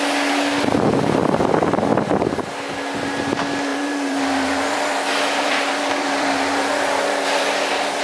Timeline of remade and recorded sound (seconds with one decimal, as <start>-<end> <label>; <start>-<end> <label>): 0.0-1.9 recorded; 1.9-2.4 remade; 2.4-3.7 recorded; 3.7-7.5 remade; 7.5-8.0 recorded